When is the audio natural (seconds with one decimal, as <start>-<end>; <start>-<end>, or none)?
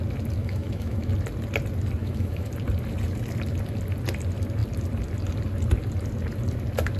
0.0-0.4; 1.1-2.0; 2.5-7.0